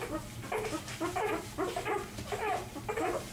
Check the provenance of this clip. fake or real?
fake